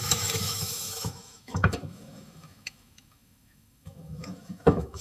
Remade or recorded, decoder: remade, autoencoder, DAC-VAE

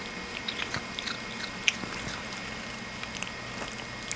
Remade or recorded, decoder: recorded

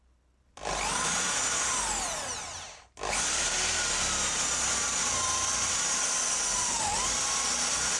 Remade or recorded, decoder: recorded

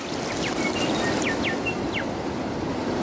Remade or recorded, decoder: recorded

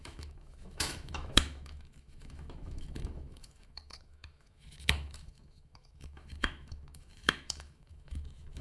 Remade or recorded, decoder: remade, autoencoder, DAC-VAE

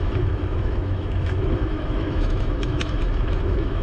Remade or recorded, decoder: remade, autoencoder, DAC-VAE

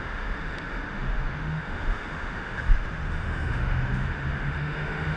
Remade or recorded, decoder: remade, autoencoder, DAC-VAE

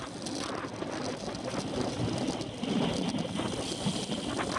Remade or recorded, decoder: recorded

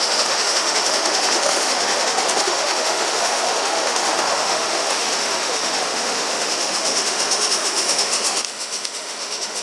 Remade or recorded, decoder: remade, autoencoder, DAC-VAE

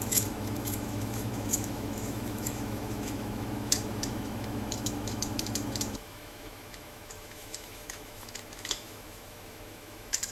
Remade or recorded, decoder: remade, autoencoder, DAC-VAE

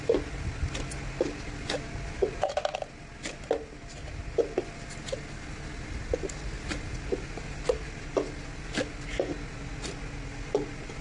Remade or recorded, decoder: recorded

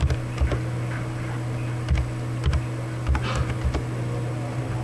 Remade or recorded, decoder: recorded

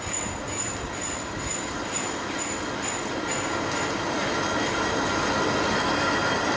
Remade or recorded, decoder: recorded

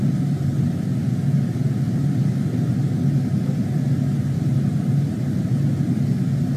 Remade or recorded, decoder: recorded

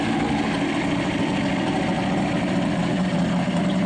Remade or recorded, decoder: recorded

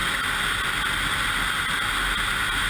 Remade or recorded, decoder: recorded